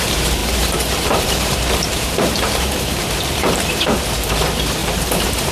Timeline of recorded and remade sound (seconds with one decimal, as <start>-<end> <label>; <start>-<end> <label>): 0.0-5.5 remade